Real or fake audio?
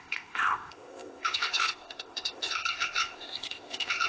fake